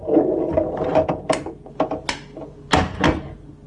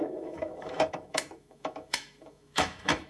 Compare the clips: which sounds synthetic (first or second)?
second